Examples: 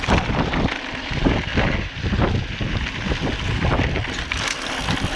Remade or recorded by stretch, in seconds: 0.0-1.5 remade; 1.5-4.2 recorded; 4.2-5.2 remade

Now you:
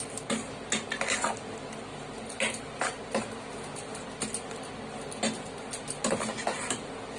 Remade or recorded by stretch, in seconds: 0.0-7.2 recorded

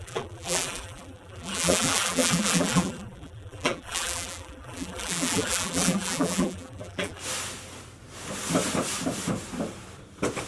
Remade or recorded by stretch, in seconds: 0.0-7.2 remade; 7.2-10.5 recorded

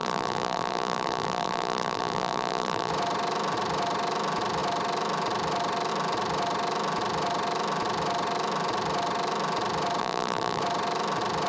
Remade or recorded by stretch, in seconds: 0.0-2.9 remade; 2.9-10.0 recorded; 10.0-10.6 remade; 10.6-11.5 recorded

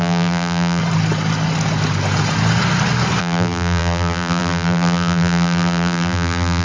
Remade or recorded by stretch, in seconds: 0.0-0.8 remade; 0.8-3.2 recorded; 3.2-6.6 remade

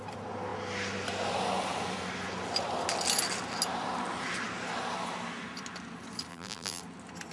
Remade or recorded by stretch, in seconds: 0.0-6.3 recorded; 6.3-6.8 remade; 6.8-7.3 recorded

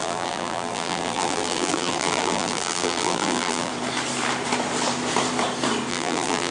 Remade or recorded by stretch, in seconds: 0.0-3.7 remade; 3.7-5.9 recorded; 5.9-6.5 remade